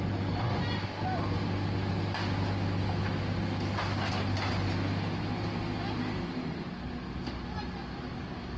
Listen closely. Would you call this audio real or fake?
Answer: real